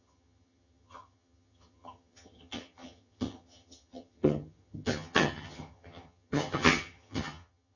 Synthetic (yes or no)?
yes